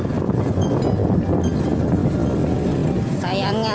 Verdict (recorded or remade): recorded